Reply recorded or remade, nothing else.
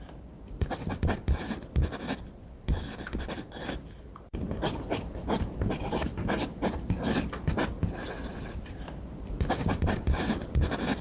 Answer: recorded